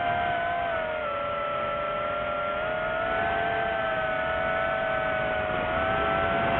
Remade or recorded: recorded